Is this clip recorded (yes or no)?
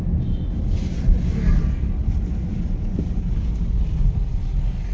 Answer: yes